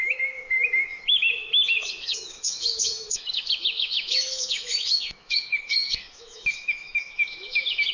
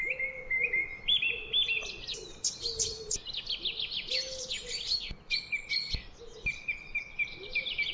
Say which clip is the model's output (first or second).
first